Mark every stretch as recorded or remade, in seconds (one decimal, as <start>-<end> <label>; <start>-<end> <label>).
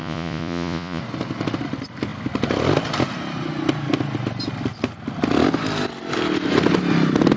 0.0-1.0 remade; 1.0-7.4 recorded